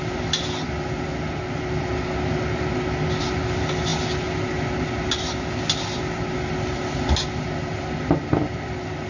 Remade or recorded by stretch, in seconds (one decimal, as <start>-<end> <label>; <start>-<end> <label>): 0.0-9.1 recorded